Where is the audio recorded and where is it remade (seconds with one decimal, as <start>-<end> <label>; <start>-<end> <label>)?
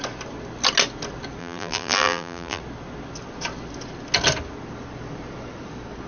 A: 0.0-1.4 recorded; 1.4-2.6 remade; 2.6-6.1 recorded